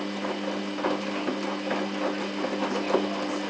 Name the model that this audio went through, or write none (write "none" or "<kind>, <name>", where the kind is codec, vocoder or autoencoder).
none